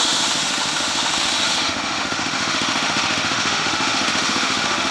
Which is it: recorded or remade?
remade